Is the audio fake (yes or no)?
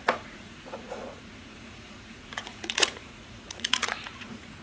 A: yes